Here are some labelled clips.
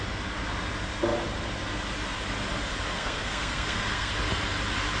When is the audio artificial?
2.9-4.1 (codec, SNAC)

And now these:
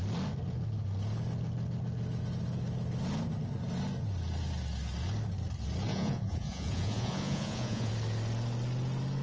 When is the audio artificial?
5.9-7.9 (vocoder, Vocos)

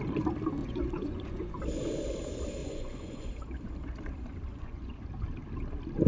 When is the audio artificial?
0.6-1.6 (vocoder, Vocos); 2.6-3.3; 4.5-5.1

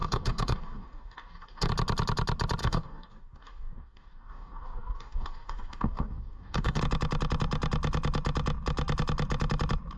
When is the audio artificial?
0.0-1.7 (codec, DAC); 2.6-6.8

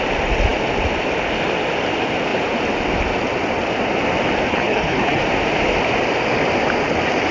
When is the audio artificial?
4.5-5.2 (codec, HILCodec)

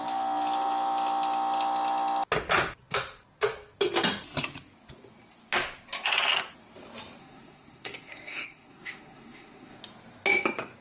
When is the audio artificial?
7.2-9.8 (codec, SNAC)

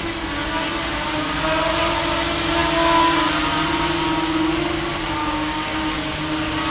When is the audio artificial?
5.2-6.0 (codec, DAC)